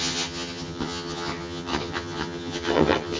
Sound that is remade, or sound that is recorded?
remade